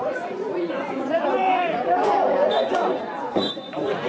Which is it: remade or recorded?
remade